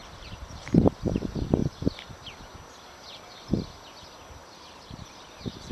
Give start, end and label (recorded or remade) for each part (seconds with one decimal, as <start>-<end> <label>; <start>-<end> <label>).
0.0-1.0 remade; 1.0-4.4 recorded; 4.4-5.3 remade; 5.3-5.7 recorded